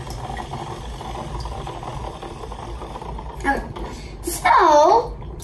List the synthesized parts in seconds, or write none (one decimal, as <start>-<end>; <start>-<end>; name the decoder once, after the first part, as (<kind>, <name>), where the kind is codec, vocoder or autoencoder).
none